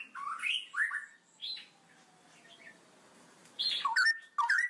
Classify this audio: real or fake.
real